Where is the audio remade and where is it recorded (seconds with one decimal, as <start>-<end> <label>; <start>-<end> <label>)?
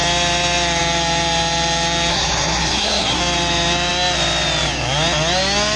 0.0-2.1 recorded; 2.1-3.2 remade; 3.2-5.8 recorded